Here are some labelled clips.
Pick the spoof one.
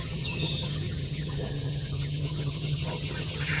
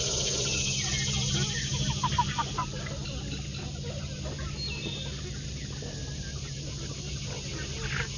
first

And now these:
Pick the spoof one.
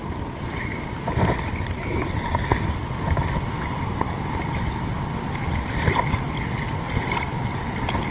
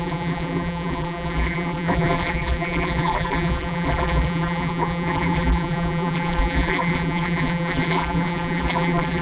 second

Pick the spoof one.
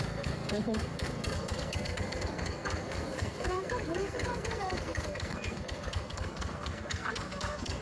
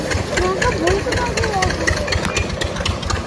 first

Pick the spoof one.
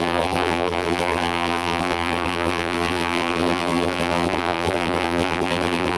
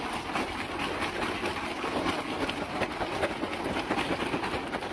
first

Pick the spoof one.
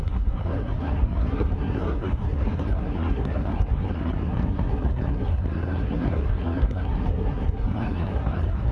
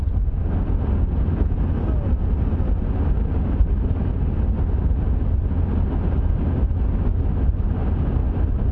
first